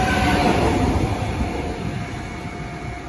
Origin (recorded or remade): recorded